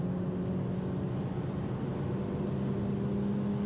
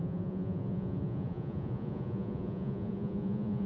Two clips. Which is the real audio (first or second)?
first